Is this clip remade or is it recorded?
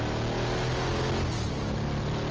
recorded